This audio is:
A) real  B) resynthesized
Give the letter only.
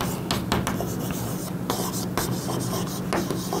A